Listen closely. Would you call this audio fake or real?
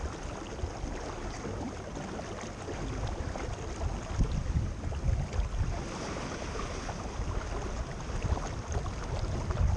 real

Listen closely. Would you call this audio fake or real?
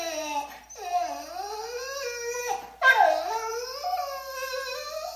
real